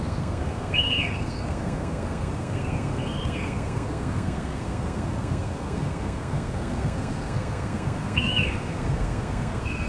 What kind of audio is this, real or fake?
fake